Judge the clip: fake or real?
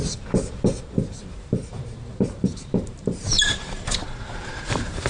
fake